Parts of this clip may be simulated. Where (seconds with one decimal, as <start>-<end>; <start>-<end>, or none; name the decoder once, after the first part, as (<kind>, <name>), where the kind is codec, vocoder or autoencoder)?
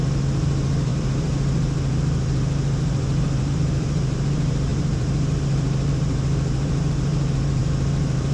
0.0-8.3 (vocoder, BigVGAN v2)